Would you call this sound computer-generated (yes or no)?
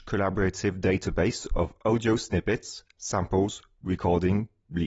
no